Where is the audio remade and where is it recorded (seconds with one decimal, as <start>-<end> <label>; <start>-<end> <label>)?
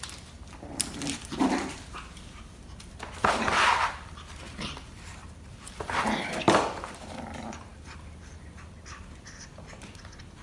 0.0-10.4 remade